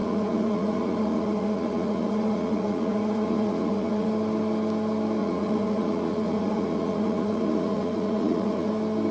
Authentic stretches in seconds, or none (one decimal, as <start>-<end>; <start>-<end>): 4.1-5.2; 8.7-9.1